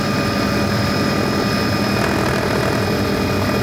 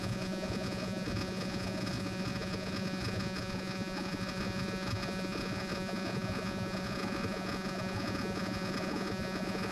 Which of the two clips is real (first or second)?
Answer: first